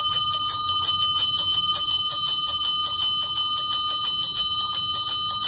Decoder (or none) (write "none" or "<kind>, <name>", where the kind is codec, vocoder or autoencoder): none